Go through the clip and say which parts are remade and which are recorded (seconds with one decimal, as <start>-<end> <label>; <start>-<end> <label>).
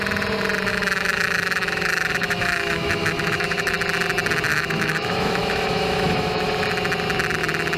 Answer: 0.0-0.7 recorded; 0.7-3.7 remade; 3.7-4.5 recorded; 4.5-6.5 remade; 6.5-7.8 recorded